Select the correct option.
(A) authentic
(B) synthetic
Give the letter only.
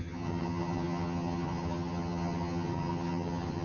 B